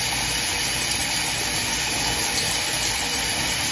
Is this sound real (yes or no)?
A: yes